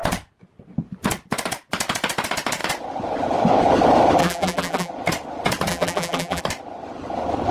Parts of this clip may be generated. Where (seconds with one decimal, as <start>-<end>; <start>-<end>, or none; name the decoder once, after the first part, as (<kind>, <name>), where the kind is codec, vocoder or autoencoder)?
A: 4.2-4.9 (vocoder, BigVGAN v2); 5.7-6.4